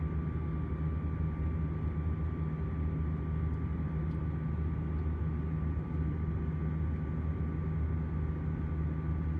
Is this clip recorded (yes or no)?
yes